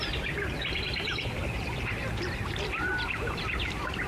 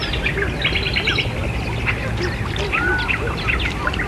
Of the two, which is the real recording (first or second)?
second